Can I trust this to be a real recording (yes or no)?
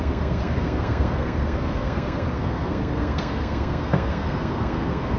no